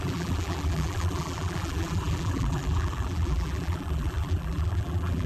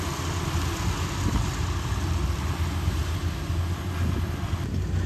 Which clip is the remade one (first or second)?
first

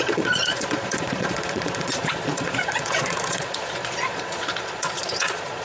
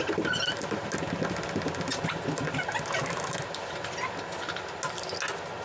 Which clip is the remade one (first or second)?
first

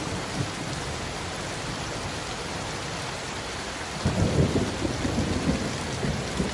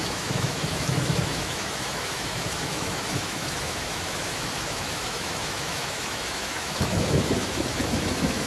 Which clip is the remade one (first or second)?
second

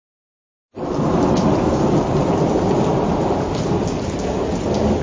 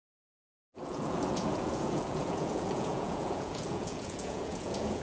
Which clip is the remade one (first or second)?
second